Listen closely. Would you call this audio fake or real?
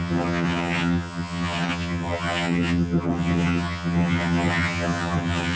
fake